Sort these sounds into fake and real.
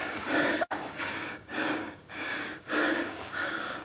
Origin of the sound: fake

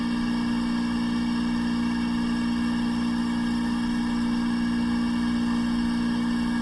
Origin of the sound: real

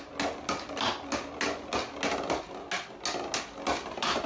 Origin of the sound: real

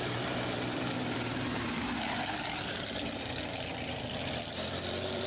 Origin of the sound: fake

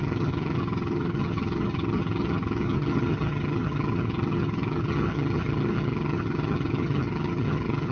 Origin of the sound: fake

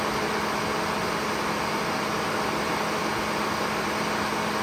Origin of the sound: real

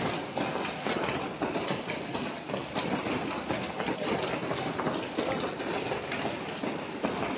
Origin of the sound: real